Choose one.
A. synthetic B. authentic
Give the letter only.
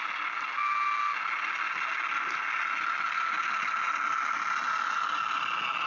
B